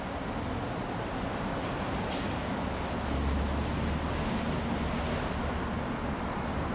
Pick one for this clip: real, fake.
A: real